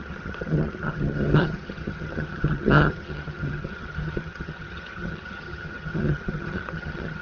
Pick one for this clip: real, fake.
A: fake